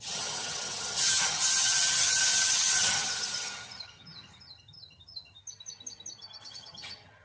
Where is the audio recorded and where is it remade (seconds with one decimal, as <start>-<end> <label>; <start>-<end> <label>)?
0.0-5.4 remade; 5.4-6.5 recorded; 6.5-7.2 remade